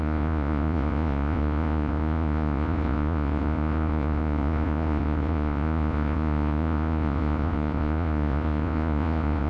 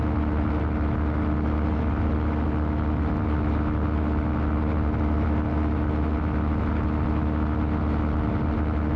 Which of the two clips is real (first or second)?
second